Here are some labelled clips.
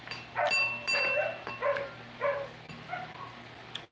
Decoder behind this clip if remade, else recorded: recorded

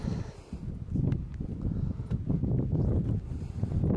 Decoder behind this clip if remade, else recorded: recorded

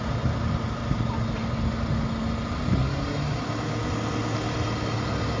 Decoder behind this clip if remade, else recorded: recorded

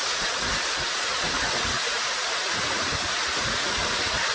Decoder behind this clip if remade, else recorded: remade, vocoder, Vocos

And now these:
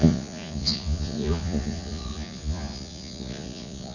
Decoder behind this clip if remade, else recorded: remade, vocoder, Vocos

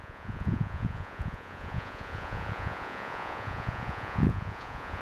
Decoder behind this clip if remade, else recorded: remade, vocoder, Vocos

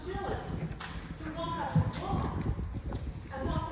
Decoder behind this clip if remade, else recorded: recorded